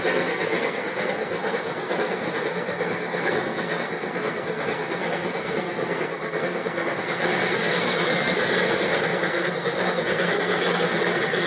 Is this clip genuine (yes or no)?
no